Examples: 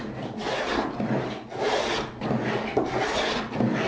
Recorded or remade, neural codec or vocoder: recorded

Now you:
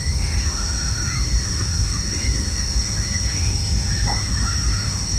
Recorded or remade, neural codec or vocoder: remade, autoencoder, DAC-VAE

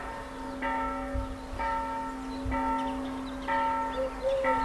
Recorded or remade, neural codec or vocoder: recorded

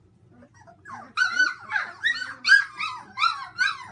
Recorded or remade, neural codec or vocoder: recorded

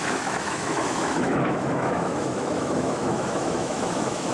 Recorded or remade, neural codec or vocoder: remade, autoencoder, DAC-VAE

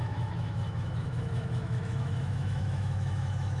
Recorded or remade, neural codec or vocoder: remade, autoencoder, DAC-VAE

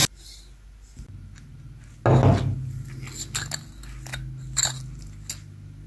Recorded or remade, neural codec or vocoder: recorded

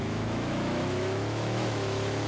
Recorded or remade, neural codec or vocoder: remade, autoencoder, DAC-VAE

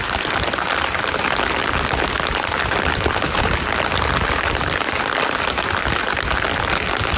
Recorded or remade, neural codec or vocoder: recorded